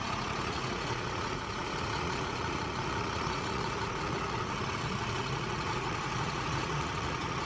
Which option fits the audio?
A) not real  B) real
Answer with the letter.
A